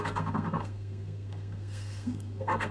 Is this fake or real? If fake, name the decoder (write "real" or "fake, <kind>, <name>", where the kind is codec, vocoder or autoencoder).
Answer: fake, codec, SNAC